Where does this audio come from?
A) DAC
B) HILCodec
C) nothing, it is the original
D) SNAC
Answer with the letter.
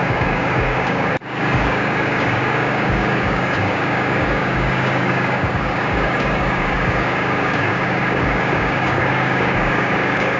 A